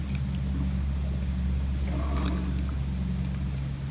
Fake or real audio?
real